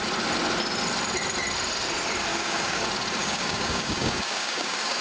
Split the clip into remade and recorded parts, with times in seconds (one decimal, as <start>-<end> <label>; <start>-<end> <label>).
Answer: 0.0-2.3 recorded; 2.3-2.8 remade; 2.8-3.2 recorded; 3.2-5.0 remade